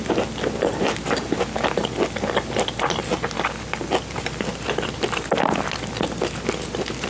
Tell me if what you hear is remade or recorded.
recorded